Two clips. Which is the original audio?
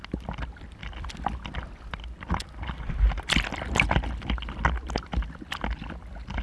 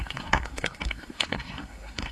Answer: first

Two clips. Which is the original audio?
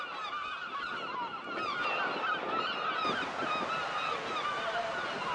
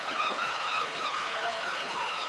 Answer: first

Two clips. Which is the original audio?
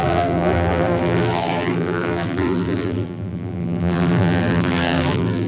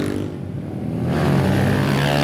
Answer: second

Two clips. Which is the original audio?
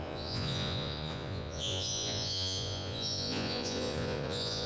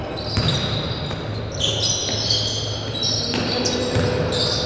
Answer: second